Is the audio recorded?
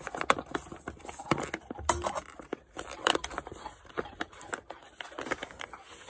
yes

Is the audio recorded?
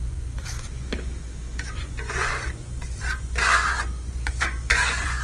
no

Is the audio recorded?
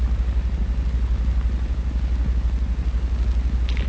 yes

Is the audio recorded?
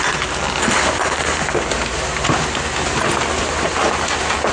yes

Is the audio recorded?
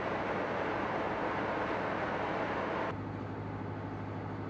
yes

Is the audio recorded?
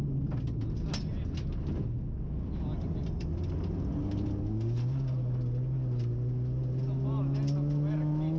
yes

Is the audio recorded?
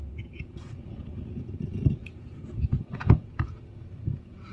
no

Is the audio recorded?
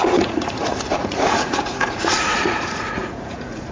no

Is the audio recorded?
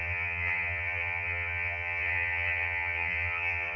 no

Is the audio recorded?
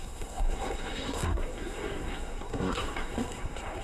no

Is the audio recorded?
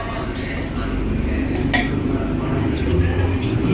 yes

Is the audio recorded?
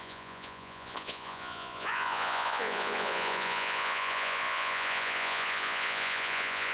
no